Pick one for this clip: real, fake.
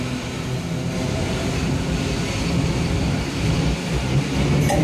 real